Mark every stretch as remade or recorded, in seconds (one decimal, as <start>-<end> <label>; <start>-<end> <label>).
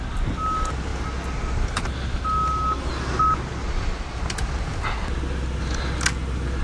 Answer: 0.0-6.6 recorded